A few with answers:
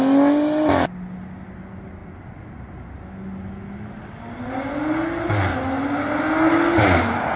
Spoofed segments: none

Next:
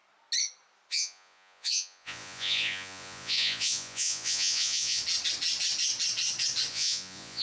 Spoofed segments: 0.9-5.0 (vocoder, Vocos); 6.7-7.4

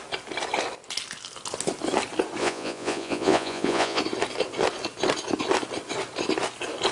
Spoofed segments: 2.4-4.0 (vocoder, Vocos)

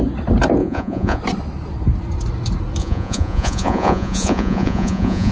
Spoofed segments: 0.6-1.2 (vocoder, Vocos); 2.8-5.3